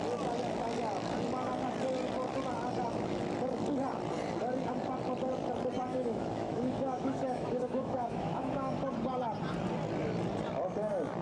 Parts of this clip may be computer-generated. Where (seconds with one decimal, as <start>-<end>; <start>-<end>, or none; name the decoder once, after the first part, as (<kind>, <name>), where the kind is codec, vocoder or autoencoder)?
5.9-8.7 (autoencoder, DAC-VAE)